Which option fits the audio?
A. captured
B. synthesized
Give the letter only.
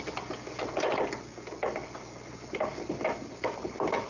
A